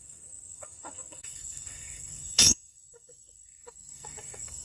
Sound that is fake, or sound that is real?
fake